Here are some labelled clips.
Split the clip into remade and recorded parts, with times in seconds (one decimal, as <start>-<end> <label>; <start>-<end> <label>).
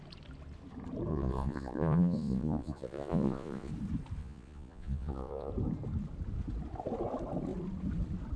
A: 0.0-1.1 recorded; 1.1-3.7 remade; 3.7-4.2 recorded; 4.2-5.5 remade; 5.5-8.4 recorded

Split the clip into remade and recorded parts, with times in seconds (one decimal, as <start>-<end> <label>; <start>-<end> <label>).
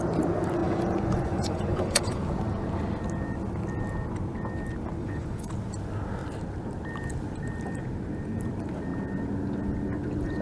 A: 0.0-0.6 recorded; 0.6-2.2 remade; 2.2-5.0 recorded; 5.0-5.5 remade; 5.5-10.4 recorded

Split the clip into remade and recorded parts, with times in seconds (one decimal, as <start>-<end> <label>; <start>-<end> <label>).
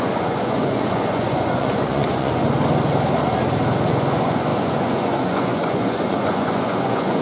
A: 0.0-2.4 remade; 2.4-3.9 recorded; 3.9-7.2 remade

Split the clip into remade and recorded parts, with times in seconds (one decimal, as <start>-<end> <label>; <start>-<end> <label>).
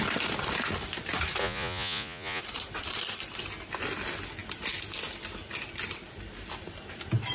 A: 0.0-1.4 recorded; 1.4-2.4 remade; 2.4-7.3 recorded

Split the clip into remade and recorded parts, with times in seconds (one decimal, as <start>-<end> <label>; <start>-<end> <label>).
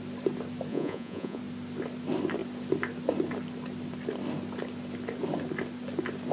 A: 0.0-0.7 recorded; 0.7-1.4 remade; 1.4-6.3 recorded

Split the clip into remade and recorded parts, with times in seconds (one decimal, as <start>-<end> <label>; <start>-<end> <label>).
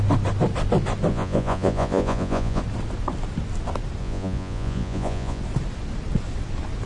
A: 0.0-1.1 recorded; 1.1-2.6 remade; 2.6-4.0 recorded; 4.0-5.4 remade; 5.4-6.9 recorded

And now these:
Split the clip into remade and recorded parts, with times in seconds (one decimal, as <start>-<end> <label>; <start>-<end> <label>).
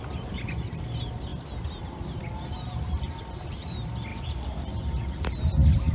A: 0.0-5.9 recorded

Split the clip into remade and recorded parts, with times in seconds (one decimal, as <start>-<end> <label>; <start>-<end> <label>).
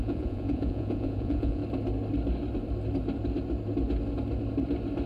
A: 0.0-1.6 remade; 1.6-5.1 recorded